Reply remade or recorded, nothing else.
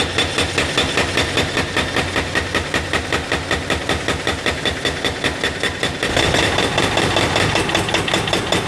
recorded